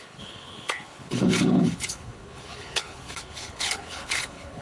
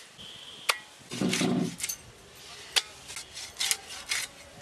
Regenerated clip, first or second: first